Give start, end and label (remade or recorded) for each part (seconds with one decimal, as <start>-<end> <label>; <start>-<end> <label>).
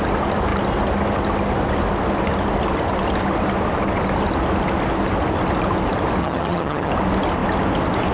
0.0-6.2 recorded; 6.2-6.9 remade; 6.9-8.1 recorded